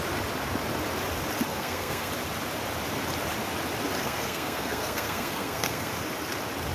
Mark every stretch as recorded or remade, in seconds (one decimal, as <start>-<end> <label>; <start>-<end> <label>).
0.0-1.5 recorded; 1.5-2.1 remade; 2.1-4.0 recorded; 4.0-5.9 remade; 5.9-6.7 recorded